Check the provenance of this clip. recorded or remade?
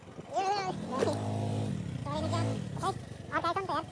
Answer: recorded